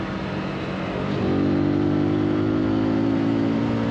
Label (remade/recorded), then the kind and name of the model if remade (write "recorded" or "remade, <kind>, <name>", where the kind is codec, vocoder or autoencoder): recorded